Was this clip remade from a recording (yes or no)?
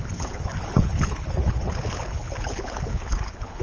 yes